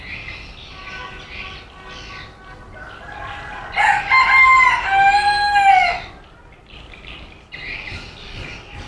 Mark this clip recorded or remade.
recorded